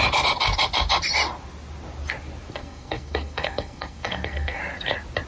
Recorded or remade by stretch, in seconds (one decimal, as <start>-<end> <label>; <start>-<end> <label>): 0.0-2.6 recorded; 2.6-4.6 remade; 4.6-5.3 recorded